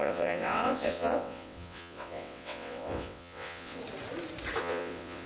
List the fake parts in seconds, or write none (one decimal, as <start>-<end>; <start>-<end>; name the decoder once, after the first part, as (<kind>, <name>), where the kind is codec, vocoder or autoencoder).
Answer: 0.0-3.8 (vocoder, WaveNeXt); 4.6-5.3